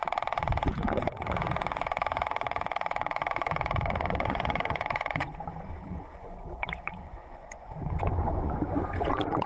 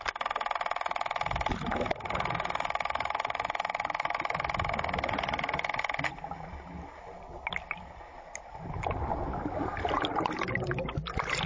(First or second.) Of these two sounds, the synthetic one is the first